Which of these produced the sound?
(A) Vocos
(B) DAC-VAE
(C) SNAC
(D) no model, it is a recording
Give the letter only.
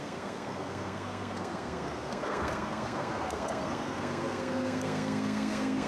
C